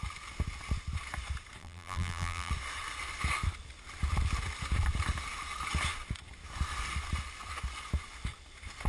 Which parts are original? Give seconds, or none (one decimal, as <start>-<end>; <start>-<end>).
0.0-1.6; 2.5-8.9